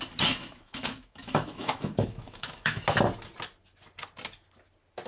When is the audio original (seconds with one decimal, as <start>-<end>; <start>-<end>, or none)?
0.0-0.4; 2.8-5.1